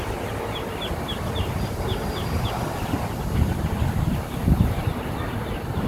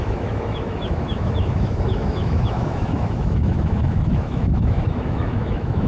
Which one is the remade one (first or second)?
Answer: second